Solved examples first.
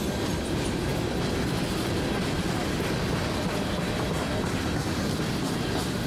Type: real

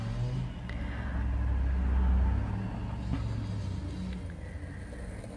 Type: real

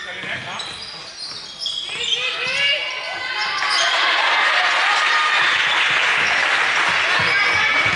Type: real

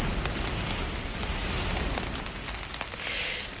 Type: real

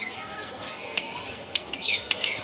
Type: fake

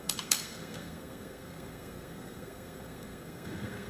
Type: fake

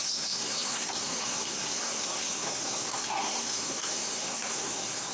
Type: fake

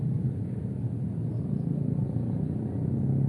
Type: real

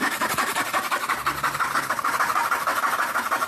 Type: real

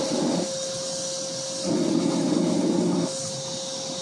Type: real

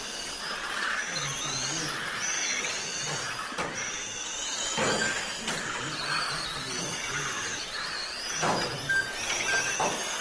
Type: real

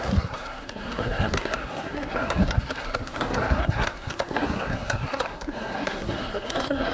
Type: fake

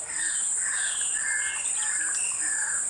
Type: real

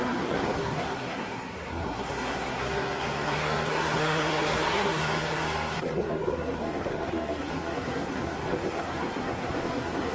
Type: fake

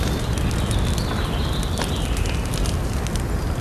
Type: real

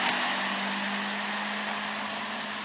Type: real